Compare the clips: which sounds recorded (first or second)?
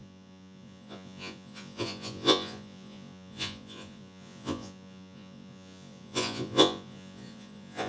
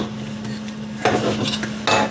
second